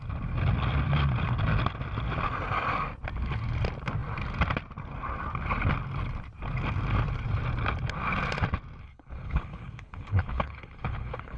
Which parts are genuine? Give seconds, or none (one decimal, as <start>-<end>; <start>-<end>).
0.0-8.8